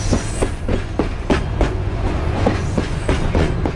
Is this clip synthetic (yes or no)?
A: yes